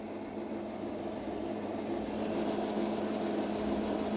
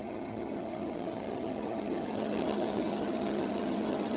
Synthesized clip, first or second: second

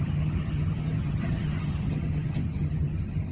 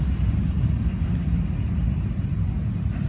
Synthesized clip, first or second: first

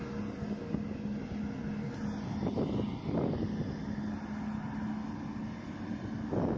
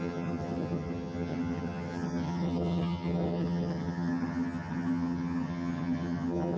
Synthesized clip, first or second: second